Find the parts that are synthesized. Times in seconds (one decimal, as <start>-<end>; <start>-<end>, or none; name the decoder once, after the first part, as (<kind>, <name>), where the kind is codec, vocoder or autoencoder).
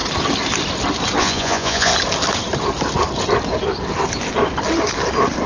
1.2-1.9 (vocoder, Vocos)